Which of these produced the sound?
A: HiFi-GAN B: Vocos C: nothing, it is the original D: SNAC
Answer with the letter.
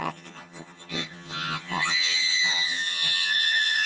A